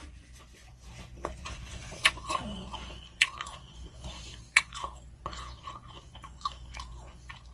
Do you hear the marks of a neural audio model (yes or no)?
yes